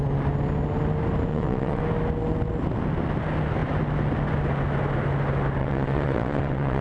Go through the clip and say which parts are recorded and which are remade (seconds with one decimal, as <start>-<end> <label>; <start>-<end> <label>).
0.0-1.3 recorded; 1.3-1.8 remade; 1.8-5.6 recorded; 5.6-6.8 remade